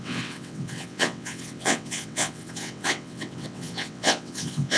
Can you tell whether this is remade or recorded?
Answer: remade